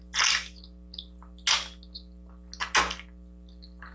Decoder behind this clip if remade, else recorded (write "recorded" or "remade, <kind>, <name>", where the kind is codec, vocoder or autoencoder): recorded